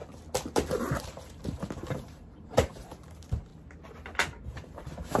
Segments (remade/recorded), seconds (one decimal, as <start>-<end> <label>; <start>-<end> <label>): 0.0-0.7 recorded; 0.7-3.5 remade; 3.5-4.5 recorded; 4.5-5.2 remade